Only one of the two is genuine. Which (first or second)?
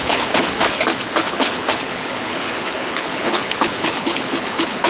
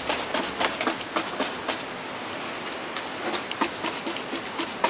second